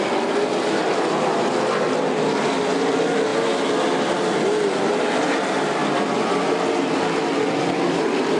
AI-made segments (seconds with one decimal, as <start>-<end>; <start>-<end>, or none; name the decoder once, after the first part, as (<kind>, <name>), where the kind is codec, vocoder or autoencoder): none